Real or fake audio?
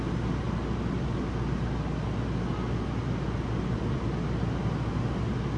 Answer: real